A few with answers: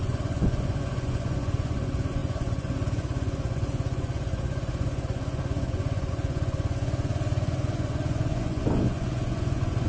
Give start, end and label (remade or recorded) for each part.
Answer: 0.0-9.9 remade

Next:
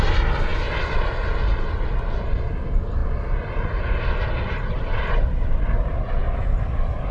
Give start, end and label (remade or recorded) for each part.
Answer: 0.0-7.1 recorded

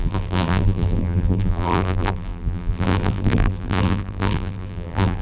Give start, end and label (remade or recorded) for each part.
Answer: 0.0-5.2 remade

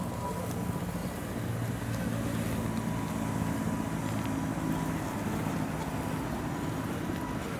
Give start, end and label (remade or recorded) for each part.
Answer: 0.0-7.6 recorded

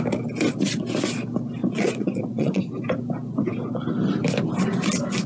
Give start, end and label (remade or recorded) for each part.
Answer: 0.0-1.6 recorded; 1.6-2.6 remade; 2.6-5.3 recorded

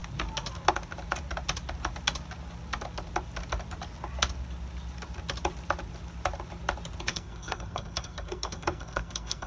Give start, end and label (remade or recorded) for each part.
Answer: 0.0-7.1 recorded; 7.1-9.5 remade

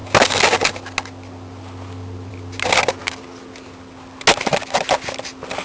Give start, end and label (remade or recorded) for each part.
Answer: 0.0-5.6 recorded

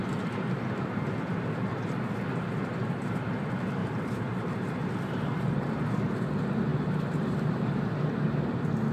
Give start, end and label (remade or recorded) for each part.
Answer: 0.0-3.8 recorded; 3.8-4.6 remade; 4.6-6.7 recorded; 6.7-7.8 remade; 7.8-8.9 recorded